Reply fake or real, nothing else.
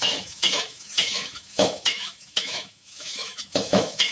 fake